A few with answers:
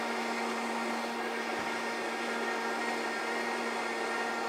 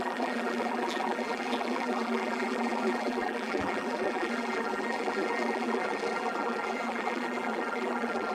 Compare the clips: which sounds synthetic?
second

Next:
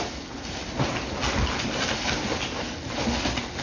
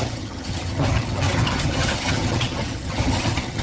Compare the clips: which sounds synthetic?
second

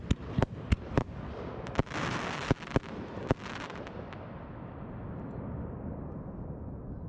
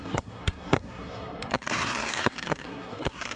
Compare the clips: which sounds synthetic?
second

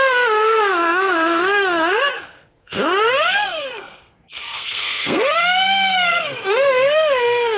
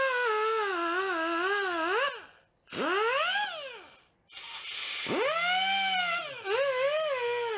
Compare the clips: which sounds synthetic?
first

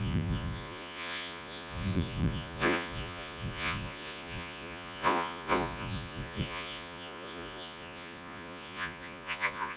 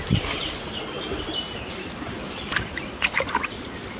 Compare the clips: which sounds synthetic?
first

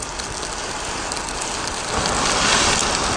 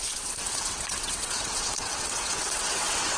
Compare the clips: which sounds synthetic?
second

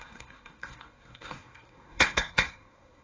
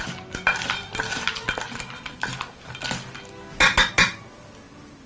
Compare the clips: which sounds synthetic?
first